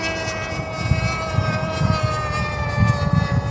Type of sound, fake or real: real